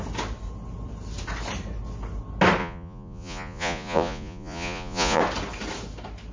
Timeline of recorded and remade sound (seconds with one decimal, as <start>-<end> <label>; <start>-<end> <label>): 0.0-2.6 recorded; 2.6-5.2 remade; 5.2-6.3 recorded